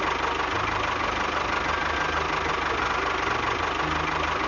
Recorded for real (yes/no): yes